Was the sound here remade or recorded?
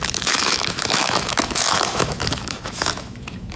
remade